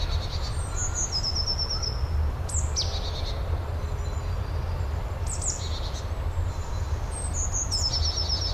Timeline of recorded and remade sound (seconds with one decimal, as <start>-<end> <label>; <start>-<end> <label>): 0.0-8.5 recorded